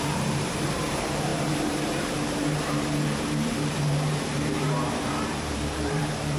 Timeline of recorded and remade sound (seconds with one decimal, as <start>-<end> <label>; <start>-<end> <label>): 0.0-6.4 remade

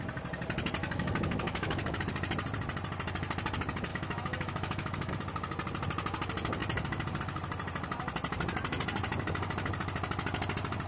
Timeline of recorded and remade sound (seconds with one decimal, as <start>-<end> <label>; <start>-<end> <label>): 0.0-0.8 recorded; 0.8-2.0 remade; 2.0-3.9 recorded; 3.9-5.1 remade; 5.1-10.9 recorded

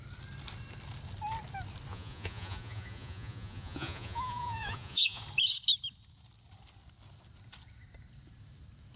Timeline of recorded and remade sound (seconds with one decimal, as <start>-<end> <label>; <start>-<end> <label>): 0.0-1.9 recorded; 1.9-5.2 remade; 5.2-9.0 recorded

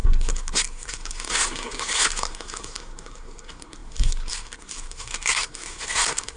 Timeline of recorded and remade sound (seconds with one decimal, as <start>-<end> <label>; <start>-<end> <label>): 0.0-6.4 remade

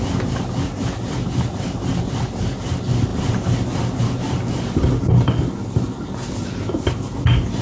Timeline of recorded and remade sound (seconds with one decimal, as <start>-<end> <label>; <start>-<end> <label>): 0.0-7.6 recorded

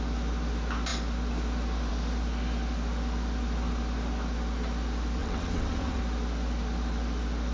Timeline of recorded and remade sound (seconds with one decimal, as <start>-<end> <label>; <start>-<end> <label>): 0.0-5.2 recorded; 5.2-6.0 remade; 6.0-7.5 recorded

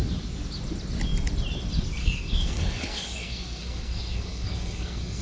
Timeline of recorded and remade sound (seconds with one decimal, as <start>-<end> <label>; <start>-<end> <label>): 0.0-2.0 recorded; 2.0-5.2 remade